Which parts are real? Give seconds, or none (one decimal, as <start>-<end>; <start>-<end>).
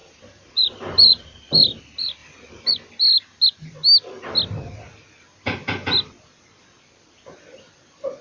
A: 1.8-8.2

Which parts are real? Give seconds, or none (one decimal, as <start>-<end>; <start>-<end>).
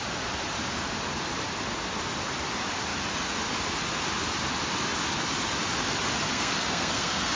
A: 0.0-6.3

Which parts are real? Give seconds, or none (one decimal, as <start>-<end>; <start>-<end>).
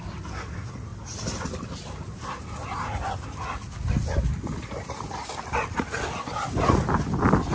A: 0.0-7.5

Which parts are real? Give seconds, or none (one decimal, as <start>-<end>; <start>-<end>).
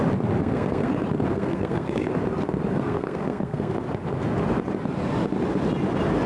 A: 0.0-0.4; 0.9-1.3; 2.1-2.7; 3.8-6.3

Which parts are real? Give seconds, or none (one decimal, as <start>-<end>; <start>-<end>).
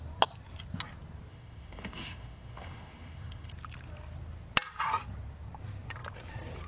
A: 0.0-1.3; 3.5-6.7